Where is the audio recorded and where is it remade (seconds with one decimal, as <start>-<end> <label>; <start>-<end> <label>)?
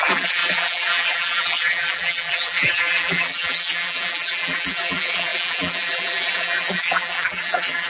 0.0-7.9 remade